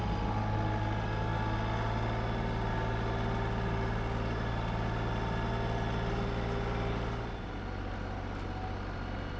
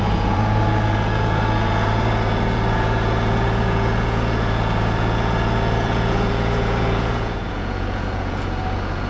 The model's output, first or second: second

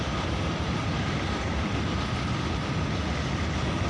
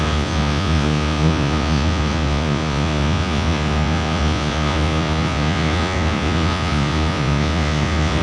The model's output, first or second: second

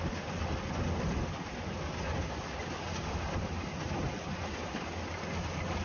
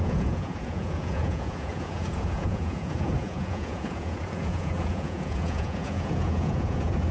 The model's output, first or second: second